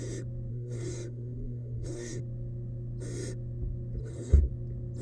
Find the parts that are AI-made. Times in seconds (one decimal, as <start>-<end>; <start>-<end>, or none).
0.5-2.2; 4.0-4.5